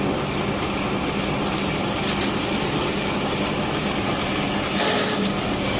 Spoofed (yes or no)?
no